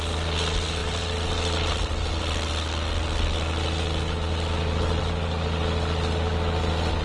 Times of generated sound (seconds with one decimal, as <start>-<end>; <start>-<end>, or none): none